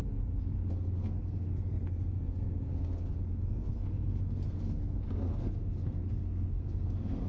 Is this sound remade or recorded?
remade